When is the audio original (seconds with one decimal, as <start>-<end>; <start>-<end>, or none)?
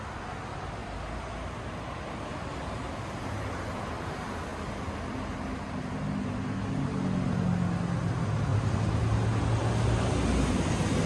0.0-11.1